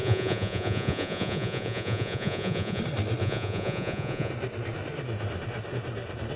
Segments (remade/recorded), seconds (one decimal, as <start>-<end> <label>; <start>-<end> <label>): 0.0-2.8 remade; 2.8-3.2 recorded; 3.2-4.3 remade; 4.3-6.4 recorded